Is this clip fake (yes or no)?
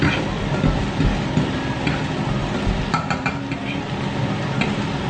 no